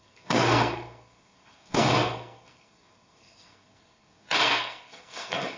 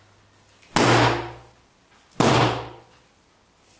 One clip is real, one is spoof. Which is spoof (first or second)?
first